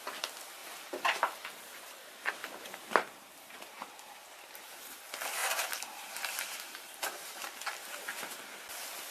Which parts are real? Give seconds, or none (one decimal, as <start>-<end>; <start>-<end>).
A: 0.0-0.6; 1.6-2.4; 5.0-5.4; 7.6-9.1